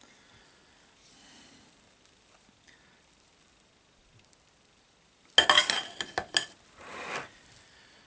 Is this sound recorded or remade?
recorded